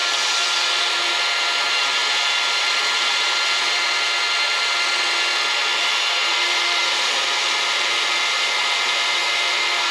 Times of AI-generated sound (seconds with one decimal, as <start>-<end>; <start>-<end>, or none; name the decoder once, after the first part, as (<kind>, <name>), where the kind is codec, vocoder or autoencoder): 2.0-3.8 (vocoder, BigVGAN v2); 5.6-7.4